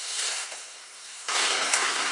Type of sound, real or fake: fake